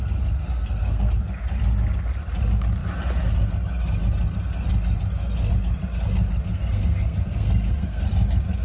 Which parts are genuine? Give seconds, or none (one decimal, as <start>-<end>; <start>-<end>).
0.0-0.4; 1.1-6.5; 8.0-8.6